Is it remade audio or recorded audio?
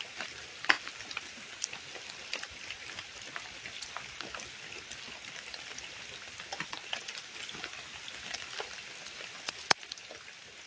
recorded